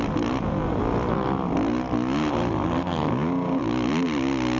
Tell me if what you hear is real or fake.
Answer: real